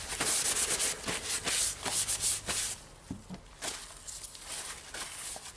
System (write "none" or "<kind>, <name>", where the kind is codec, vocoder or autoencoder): none